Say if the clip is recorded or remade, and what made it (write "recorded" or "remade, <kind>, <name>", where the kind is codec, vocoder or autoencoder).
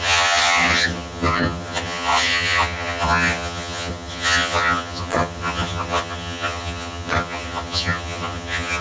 remade, vocoder, HiFi-GAN